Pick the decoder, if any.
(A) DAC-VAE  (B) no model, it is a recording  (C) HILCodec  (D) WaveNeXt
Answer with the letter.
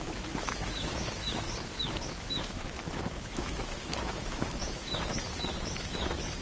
A